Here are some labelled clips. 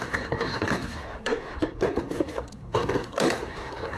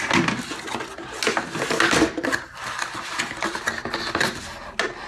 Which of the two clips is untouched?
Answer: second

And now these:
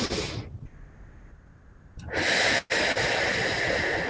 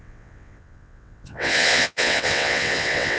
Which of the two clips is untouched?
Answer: first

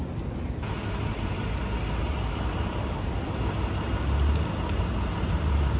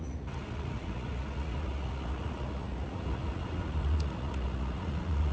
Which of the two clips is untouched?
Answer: first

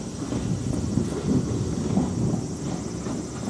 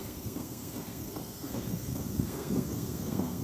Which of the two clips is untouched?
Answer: first